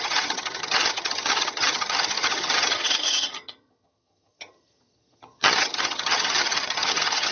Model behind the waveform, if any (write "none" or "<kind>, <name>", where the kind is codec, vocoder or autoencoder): vocoder, HiFi-GAN